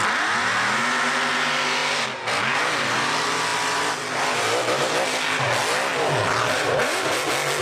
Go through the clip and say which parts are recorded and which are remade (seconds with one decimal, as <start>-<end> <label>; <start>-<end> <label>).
0.0-7.6 recorded